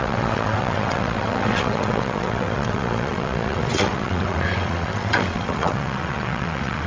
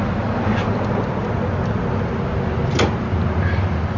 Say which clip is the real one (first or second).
second